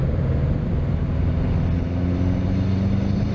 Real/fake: real